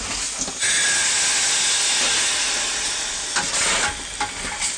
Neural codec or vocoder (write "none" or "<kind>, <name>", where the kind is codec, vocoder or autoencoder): none